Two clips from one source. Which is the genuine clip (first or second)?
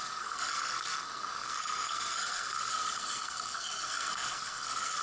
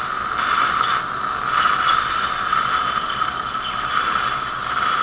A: second